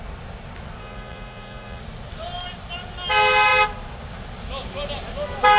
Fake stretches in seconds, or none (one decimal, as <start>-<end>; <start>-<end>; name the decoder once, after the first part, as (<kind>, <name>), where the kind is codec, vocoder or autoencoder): 0.8-1.8 (vocoder, Vocos)